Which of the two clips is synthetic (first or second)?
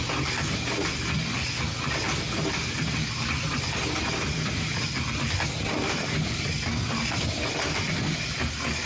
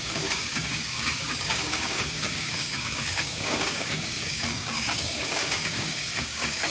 second